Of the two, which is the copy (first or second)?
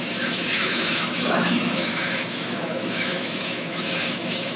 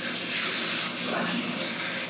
first